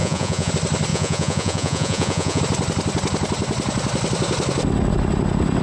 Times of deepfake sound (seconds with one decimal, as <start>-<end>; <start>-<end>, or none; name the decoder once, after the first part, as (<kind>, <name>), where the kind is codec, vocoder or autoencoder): 0.0-0.5 (vocoder, Vocos); 0.9-2.4